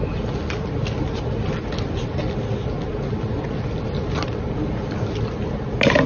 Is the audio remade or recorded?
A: recorded